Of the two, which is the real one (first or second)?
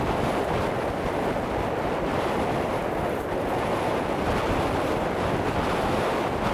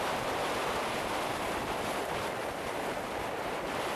first